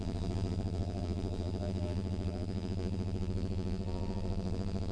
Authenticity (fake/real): fake